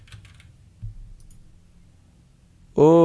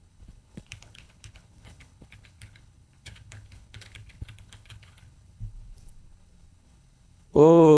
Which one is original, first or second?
first